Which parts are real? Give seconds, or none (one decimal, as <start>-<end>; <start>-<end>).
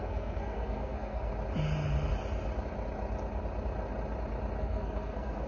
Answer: 1.3-4.6